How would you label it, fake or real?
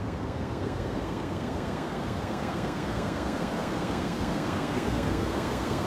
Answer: fake